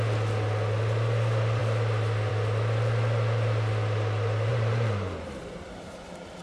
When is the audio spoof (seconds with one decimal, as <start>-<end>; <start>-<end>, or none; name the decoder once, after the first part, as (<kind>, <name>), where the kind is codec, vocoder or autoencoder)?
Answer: 4.5-6.4 (vocoder, BigVGAN v2)